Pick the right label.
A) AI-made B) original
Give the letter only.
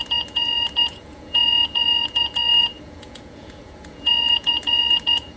A